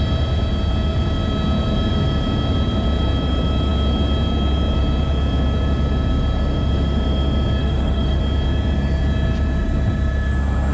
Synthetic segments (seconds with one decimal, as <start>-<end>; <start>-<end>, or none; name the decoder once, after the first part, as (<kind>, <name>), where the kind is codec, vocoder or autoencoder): 7.6-8.2 (autoencoder, DAC-VAE)